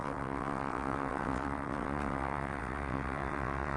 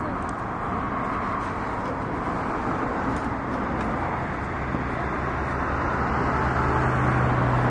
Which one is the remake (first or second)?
first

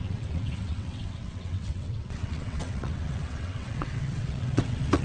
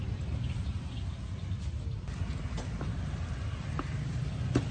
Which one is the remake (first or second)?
first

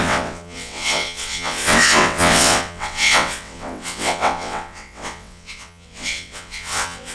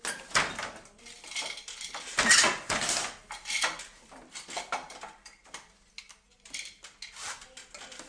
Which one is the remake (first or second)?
first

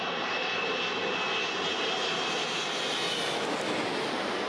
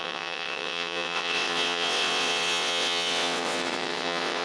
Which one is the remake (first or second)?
second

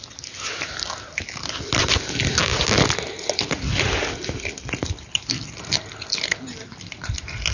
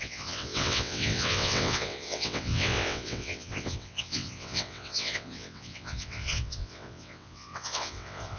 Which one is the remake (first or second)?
second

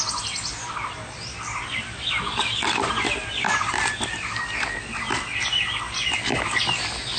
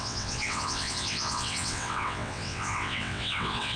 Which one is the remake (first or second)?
second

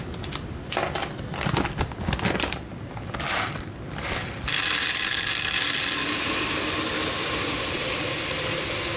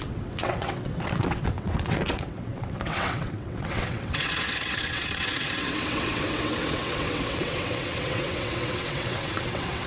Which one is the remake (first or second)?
second